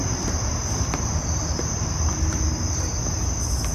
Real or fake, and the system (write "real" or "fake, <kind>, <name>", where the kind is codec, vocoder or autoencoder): fake, vocoder, BigVGAN v2